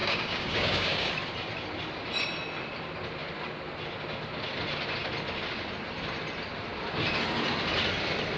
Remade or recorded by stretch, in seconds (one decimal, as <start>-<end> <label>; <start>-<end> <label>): 0.0-1.1 remade; 1.1-8.4 recorded